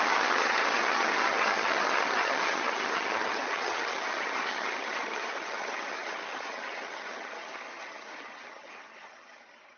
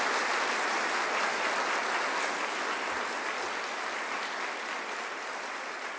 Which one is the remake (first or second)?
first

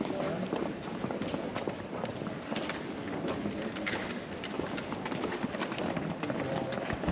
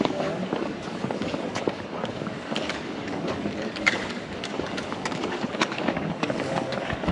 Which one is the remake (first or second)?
second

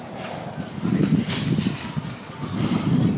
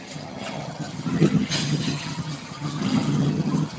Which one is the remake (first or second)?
second